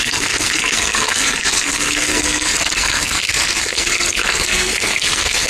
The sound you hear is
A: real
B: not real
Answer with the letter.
B